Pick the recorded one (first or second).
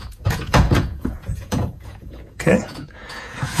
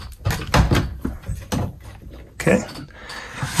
second